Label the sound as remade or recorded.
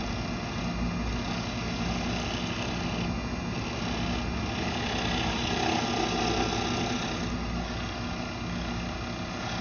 recorded